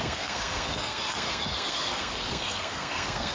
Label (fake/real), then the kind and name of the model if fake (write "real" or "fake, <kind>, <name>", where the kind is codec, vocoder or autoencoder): fake, codec, SNAC